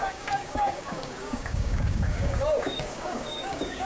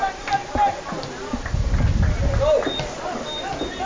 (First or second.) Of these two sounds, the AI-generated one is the first